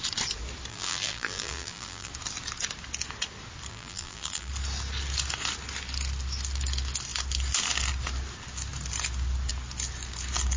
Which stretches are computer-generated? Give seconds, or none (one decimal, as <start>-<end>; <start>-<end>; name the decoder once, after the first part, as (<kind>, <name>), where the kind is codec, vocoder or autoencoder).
0.7-2.1 (vocoder, BigVGAN v2); 3.7-4.5